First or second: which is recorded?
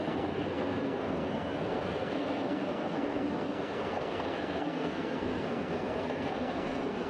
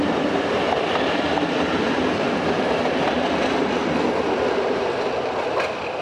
second